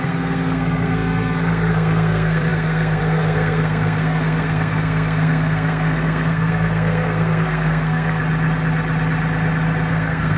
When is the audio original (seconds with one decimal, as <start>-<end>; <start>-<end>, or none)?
8.2-9.9